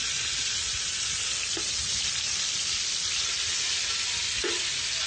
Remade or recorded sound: recorded